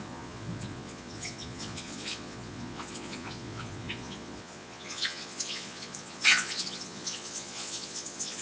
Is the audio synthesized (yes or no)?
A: yes